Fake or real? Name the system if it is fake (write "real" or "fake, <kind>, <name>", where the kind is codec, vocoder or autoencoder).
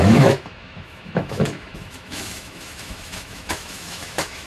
fake, autoencoder, DAC-VAE